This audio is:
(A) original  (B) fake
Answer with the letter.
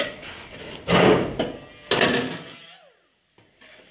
A